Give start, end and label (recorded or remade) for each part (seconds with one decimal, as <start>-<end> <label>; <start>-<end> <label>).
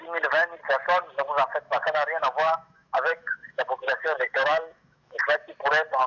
0.0-1.5 recorded; 1.5-5.2 remade; 5.2-6.1 recorded